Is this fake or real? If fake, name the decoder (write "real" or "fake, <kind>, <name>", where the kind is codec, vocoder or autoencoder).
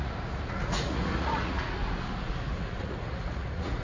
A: fake, vocoder, Vocos